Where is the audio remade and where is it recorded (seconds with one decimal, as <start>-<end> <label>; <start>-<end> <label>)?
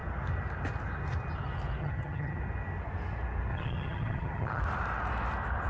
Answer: 0.0-1.8 recorded; 1.8-2.4 remade; 2.4-3.5 recorded; 3.5-4.6 remade; 4.6-5.7 recorded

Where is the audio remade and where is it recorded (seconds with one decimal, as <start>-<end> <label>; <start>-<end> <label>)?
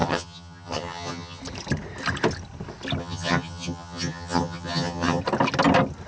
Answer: 0.0-1.4 remade; 1.4-3.0 recorded; 3.0-5.2 remade; 5.2-6.1 recorded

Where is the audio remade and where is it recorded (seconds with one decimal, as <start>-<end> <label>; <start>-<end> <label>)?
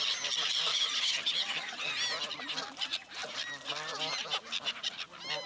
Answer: 0.0-0.7 recorded; 0.7-1.9 remade; 1.9-5.5 recorded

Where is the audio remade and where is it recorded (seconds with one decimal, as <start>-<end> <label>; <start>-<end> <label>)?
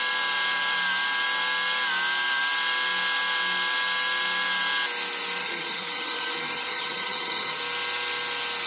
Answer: 0.0-5.4 recorded; 5.4-7.6 remade; 7.6-8.7 recorded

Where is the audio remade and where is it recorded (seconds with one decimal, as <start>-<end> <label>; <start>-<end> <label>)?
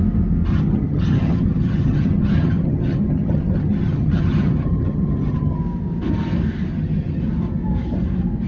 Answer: 0.0-0.5 recorded; 0.5-5.6 remade; 5.6-6.7 recorded; 6.7-7.2 remade; 7.2-8.5 recorded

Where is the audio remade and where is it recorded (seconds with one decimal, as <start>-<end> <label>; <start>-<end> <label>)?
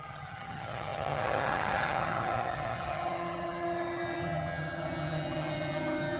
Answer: 0.0-6.2 remade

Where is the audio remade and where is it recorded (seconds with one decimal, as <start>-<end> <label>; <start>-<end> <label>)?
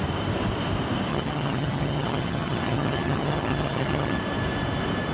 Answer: 0.0-1.1 recorded; 1.1-4.2 remade; 4.2-5.1 recorded